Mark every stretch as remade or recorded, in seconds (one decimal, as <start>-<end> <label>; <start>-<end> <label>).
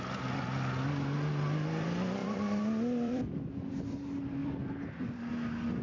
0.0-2.2 recorded; 2.2-3.7 remade; 3.7-4.4 recorded; 4.4-5.3 remade; 5.3-5.8 recorded